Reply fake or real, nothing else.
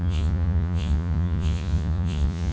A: fake